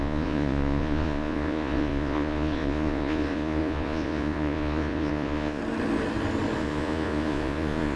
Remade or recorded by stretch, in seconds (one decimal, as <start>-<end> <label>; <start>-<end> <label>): 0.0-5.6 remade; 5.6-6.6 recorded; 6.6-8.0 remade